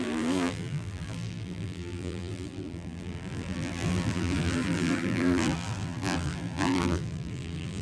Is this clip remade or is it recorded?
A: remade